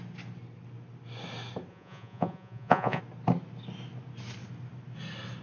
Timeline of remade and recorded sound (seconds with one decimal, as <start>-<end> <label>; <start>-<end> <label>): 0.0-1.7 recorded; 1.7-3.0 remade; 3.0-5.4 recorded